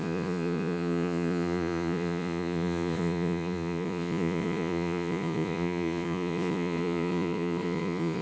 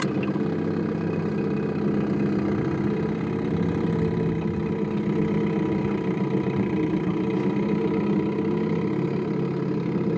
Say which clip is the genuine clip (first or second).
second